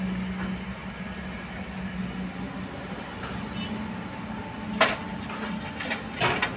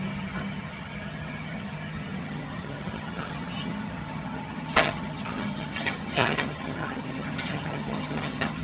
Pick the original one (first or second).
first